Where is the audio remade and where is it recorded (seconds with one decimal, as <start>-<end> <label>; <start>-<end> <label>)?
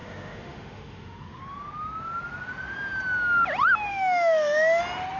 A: 0.0-1.4 remade; 1.4-3.9 recorded; 3.9-4.8 remade; 4.8-5.2 recorded